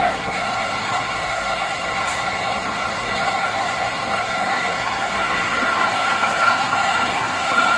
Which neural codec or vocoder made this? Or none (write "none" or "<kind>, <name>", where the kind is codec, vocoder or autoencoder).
codec, SNAC